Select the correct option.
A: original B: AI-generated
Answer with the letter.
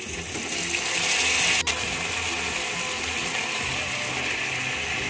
A